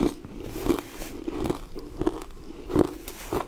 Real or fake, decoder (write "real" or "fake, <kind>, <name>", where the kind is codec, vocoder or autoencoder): real